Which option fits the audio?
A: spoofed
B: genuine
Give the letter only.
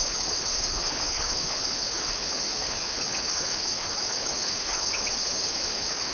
A